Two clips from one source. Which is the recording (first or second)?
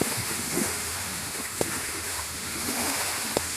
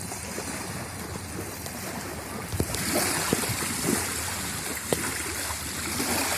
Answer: second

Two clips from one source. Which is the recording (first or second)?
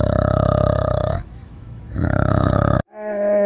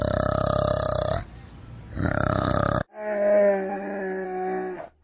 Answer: second